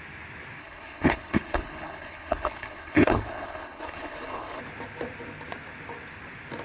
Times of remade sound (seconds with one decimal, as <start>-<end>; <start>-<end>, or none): 0.6-4.6

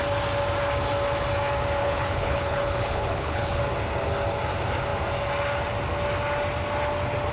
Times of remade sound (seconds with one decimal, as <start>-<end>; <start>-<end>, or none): 1.8-3.6

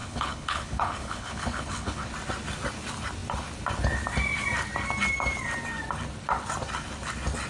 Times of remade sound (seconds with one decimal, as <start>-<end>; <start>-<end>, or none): 0.0-2.1

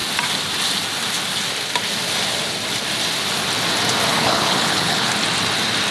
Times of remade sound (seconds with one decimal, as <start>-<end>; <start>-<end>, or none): 4.1-5.1

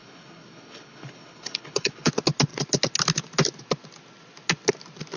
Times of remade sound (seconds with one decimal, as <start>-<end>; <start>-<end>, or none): 0.0-2.1

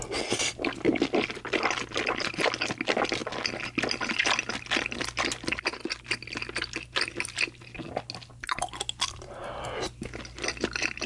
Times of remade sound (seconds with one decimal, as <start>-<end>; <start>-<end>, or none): none

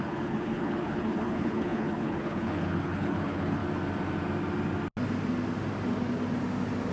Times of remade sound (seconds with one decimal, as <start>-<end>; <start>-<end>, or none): 0.0-3.6

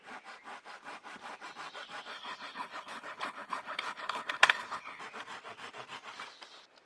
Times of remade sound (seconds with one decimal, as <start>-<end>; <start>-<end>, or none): 2.1-5.0